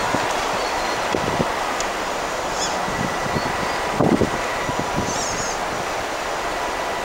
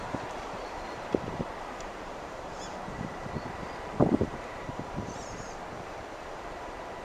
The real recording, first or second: first